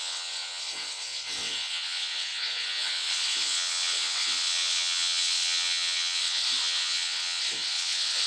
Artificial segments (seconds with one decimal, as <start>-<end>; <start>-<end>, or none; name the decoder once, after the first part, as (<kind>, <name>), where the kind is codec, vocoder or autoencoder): 0.0-8.3 (vocoder, WaveNeXt)